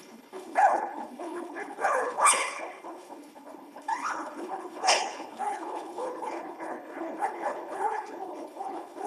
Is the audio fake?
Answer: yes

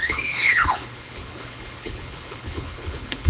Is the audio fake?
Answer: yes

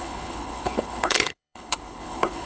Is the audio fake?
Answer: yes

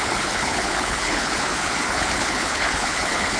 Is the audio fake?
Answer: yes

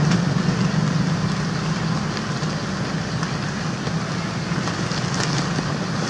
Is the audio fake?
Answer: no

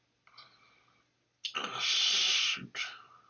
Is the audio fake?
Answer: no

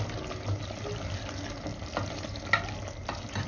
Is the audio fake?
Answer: no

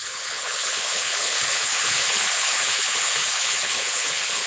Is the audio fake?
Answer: yes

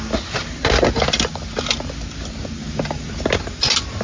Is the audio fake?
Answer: no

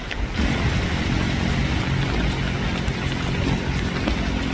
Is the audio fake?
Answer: no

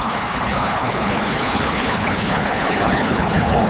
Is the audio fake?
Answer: yes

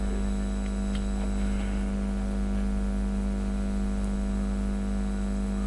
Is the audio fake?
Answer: no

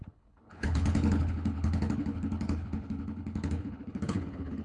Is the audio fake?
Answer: yes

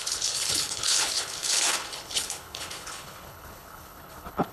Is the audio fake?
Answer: yes